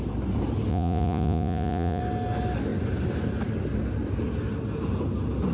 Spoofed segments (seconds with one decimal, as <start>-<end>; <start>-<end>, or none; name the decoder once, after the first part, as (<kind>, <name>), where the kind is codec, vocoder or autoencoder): 0.7-2.0 (vocoder, Vocos)